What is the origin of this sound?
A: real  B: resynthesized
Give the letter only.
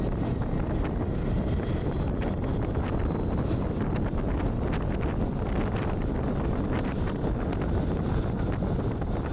A